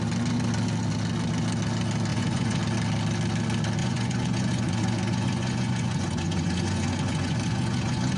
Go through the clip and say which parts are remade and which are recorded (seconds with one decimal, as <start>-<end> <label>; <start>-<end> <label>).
0.0-2.1 recorded; 2.1-2.6 remade; 2.6-3.8 recorded; 3.8-8.2 remade